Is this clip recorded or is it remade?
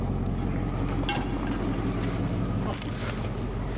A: recorded